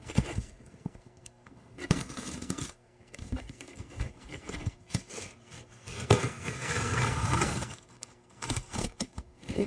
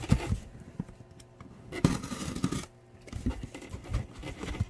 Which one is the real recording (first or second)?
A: second